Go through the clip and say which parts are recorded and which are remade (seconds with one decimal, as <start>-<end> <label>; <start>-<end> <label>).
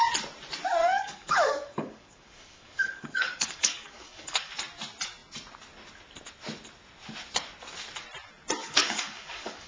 0.0-0.8 recorded; 0.8-4.5 remade; 4.5-8.6 recorded; 8.6-9.7 remade